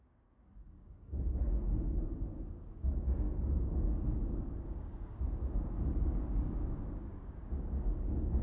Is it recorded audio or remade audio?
remade